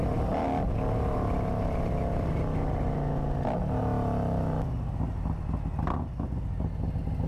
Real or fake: real